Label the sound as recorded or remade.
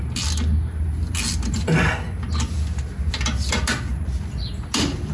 recorded